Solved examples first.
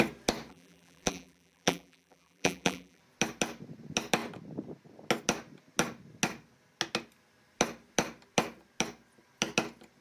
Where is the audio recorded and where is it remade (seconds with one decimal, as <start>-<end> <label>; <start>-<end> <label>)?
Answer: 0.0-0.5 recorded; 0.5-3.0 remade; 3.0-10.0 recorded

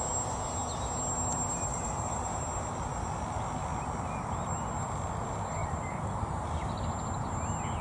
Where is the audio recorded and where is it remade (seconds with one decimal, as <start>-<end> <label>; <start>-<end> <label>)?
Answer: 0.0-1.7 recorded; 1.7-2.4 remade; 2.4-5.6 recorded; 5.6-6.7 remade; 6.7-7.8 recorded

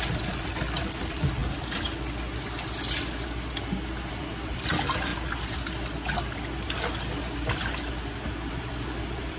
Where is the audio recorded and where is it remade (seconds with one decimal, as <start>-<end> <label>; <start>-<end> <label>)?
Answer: 0.0-1.4 remade; 1.4-4.1 recorded; 4.1-5.1 remade; 5.1-8.5 recorded; 8.5-9.4 remade